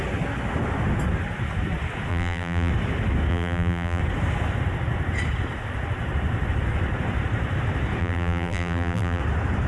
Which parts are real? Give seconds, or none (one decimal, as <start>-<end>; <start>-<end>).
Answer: 0.0-2.1; 2.7-3.3; 4.0-8.0; 9.2-9.7

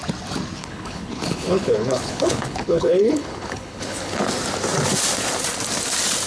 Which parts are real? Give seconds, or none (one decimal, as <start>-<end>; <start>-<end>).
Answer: 0.0-0.6; 4.2-6.3

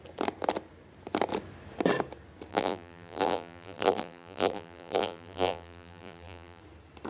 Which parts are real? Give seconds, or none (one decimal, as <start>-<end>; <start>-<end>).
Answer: 0.0-2.5; 6.6-7.1

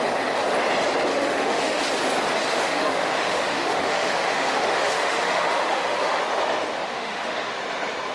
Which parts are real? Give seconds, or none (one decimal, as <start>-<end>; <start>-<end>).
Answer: 0.0-1.1; 1.8-2.5; 6.2-6.8; 7.5-8.1

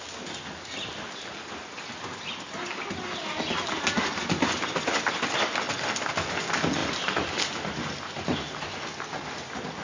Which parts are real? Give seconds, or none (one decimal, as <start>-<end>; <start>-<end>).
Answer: 0.0-9.8

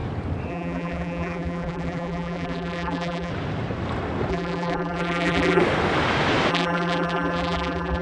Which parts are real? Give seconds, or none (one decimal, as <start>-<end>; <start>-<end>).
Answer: 0.0-0.5; 3.3-4.3; 5.6-6.5

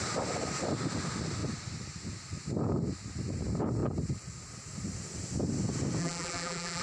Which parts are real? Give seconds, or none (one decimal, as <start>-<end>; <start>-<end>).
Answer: 0.0-6.0